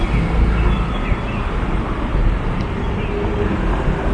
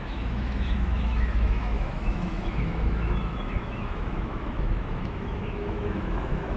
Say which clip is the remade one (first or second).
second